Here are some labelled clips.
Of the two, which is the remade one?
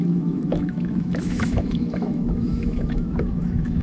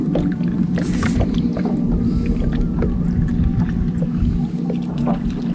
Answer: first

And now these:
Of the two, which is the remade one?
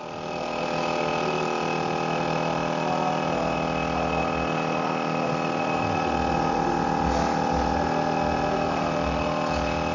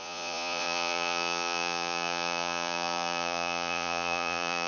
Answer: second